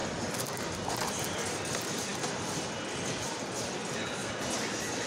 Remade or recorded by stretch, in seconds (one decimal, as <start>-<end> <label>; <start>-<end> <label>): 0.0-1.2 remade; 1.2-4.2 recorded; 4.2-5.1 remade